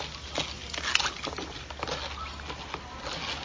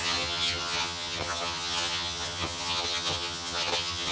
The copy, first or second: second